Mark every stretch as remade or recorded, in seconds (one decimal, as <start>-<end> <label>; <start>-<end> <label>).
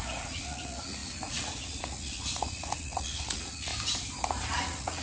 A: 0.0-3.7 remade; 3.7-4.6 recorded; 4.6-5.0 remade